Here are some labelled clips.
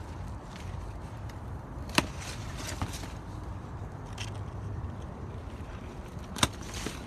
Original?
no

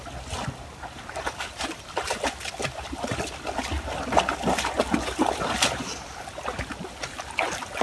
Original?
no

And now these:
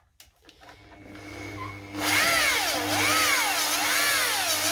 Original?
yes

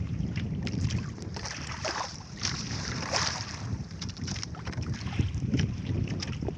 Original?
no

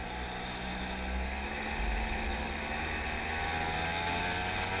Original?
yes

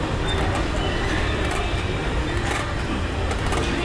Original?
yes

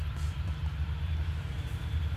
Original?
no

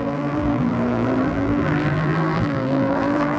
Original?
no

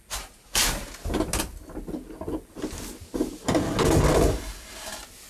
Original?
yes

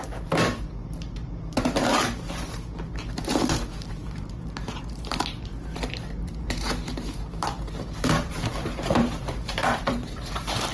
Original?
no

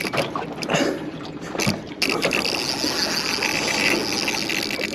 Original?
yes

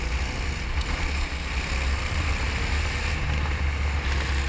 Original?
yes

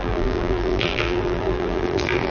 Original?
no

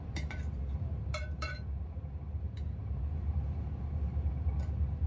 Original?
no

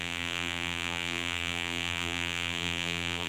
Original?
no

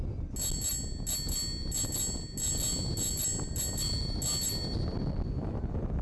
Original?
yes